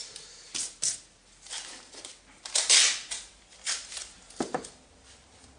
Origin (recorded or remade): recorded